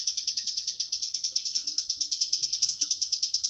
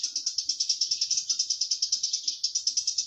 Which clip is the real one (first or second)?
second